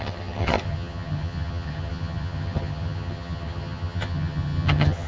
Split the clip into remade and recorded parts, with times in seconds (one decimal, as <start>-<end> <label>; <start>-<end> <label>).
0.0-5.1 remade